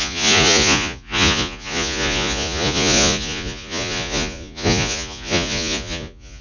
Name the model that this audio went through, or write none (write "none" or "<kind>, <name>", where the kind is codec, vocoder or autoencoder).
vocoder, Vocos